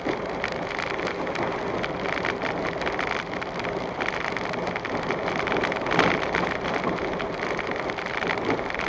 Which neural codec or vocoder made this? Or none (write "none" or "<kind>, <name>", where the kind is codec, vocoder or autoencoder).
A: none